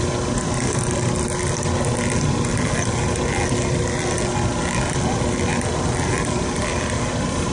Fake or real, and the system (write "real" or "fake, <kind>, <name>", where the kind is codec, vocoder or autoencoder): real